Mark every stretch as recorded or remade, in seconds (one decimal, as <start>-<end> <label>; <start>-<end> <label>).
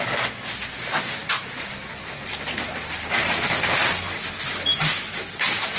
0.0-5.8 recorded